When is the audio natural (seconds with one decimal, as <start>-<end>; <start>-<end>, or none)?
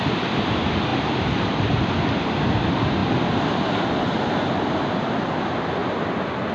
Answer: 0.0-6.5